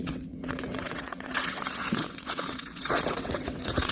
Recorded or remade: remade